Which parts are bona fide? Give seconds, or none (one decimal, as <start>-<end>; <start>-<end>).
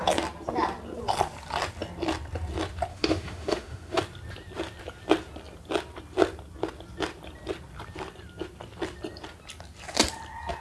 0.0-2.9; 4.0-10.6